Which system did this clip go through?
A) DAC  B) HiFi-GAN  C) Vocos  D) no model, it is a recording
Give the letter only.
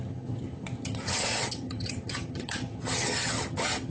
B